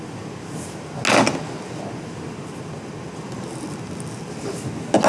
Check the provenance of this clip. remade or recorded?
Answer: recorded